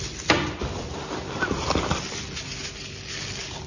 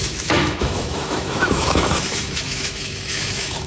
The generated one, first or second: second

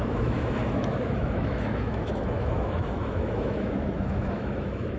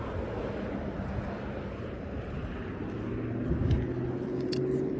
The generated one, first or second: first